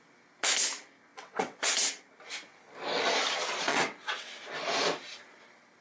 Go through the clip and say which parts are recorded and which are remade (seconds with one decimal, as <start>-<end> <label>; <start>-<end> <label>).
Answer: 0.0-1.1 recorded; 1.1-1.9 remade; 1.9-3.7 recorded; 3.7-4.3 remade; 4.3-5.8 recorded